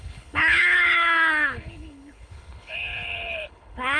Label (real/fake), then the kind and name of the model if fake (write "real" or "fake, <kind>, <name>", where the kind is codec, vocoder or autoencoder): fake, codec, HILCodec